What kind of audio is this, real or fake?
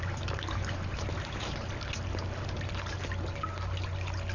real